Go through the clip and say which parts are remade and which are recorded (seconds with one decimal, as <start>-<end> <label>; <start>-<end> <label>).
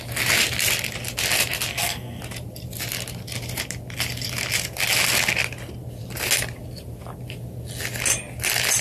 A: 0.0-1.7 recorded; 1.7-2.2 remade; 2.2-8.8 recorded